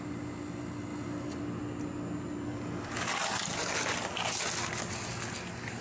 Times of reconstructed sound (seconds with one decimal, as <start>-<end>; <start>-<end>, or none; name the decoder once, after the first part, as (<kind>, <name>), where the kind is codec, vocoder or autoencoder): none